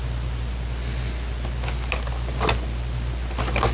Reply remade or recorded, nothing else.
recorded